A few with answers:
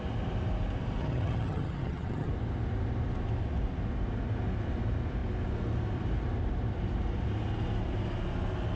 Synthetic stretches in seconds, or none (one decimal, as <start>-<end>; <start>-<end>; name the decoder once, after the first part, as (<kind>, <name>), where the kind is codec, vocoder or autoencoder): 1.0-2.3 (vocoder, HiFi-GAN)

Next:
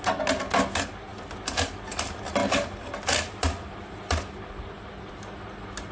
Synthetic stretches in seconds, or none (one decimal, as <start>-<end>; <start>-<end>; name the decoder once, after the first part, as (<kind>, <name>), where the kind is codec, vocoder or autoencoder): none

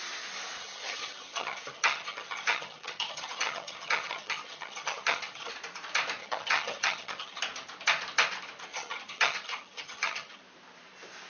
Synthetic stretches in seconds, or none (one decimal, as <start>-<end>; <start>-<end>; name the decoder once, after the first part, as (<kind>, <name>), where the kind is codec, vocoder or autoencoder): 0.6-5.5 (vocoder, HiFi-GAN); 6.2-7.4; 8.7-10.4

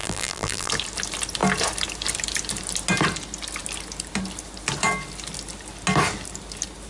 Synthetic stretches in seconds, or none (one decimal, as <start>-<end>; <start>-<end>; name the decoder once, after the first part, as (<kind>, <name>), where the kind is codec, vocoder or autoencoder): 0.0-0.7 (vocoder, BigVGAN v2)

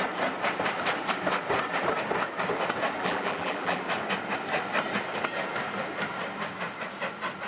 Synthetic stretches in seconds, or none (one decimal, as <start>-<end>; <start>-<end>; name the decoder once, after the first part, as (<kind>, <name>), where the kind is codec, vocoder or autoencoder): 3.0-3.8 (vocoder, BigVGAN v2)